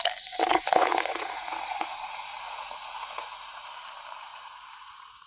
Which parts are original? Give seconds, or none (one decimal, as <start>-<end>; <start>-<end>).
0.0-0.5; 3.7-4.3